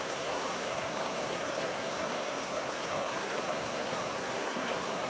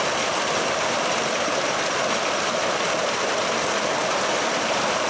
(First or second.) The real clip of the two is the second